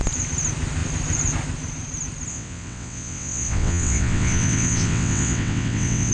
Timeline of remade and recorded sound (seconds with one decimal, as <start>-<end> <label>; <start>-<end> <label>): 0.0-2.3 recorded; 2.3-6.1 remade